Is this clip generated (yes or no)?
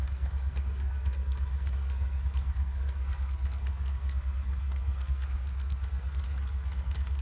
yes